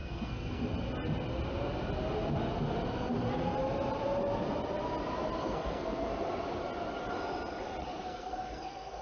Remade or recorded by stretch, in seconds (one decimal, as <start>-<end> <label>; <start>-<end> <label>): 0.0-0.6 remade; 0.6-5.4 recorded; 5.4-6.1 remade; 6.1-7.8 recorded; 7.8-9.0 remade